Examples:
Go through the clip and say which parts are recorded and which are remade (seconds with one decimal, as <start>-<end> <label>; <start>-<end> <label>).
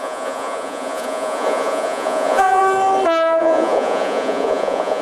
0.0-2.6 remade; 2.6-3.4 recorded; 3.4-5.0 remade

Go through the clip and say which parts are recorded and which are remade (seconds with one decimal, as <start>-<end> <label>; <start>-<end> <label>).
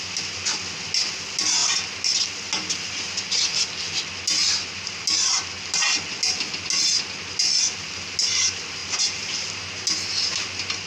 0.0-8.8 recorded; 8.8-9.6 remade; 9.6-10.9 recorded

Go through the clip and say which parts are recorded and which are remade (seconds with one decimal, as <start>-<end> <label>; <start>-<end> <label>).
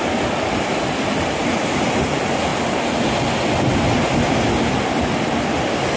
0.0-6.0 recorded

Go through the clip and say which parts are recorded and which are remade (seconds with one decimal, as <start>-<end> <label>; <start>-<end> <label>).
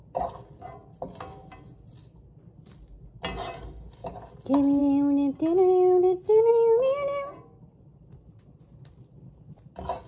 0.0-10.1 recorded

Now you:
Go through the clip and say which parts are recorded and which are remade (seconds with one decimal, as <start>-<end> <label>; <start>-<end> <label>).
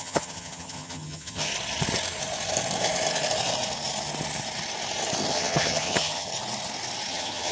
0.0-1.5 remade; 1.5-5.3 recorded; 5.3-6.3 remade; 6.3-7.1 recorded; 7.1-7.5 remade